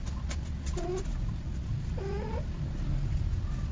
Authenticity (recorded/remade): remade